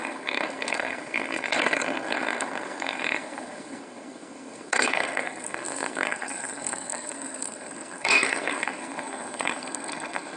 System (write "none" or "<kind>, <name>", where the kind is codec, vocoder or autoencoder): codec, SNAC